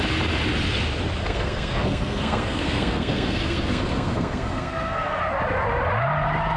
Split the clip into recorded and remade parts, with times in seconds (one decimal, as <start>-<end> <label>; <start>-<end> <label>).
0.0-1.2 recorded; 1.2-5.2 remade; 5.2-6.6 recorded